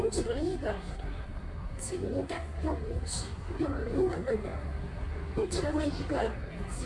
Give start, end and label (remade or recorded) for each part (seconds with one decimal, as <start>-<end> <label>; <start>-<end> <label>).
0.0-6.9 remade